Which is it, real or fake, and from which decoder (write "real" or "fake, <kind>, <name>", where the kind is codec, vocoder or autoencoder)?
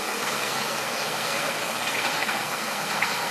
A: fake, codec, SNAC